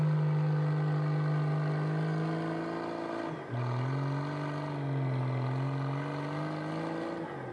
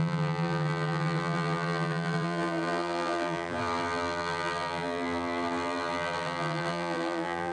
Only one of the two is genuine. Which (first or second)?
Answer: first